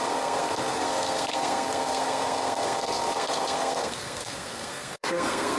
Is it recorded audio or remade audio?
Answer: remade